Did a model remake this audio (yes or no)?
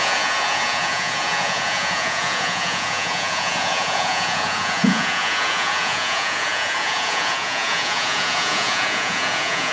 yes